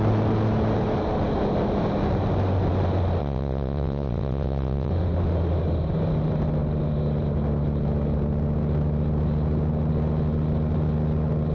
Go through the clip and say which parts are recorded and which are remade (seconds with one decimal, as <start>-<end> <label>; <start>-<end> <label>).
0.0-3.2 recorded; 3.2-4.9 remade; 4.9-11.5 recorded